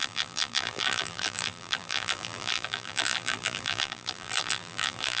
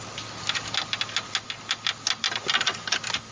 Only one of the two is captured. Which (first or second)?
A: second